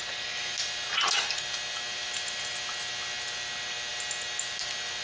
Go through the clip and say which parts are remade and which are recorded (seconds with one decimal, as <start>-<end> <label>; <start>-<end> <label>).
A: 0.0-5.0 recorded